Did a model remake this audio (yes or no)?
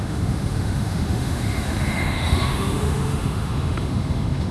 yes